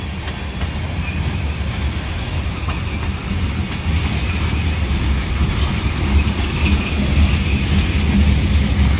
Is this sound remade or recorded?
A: recorded